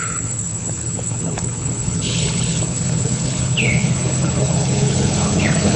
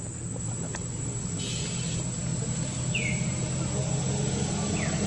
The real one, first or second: second